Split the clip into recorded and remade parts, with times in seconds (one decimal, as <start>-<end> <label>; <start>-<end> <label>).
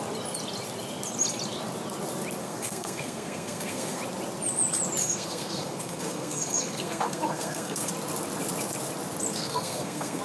0.0-2.4 recorded; 2.4-4.0 remade; 4.0-5.0 recorded; 5.0-7.9 remade; 7.9-9.3 recorded; 9.3-10.2 remade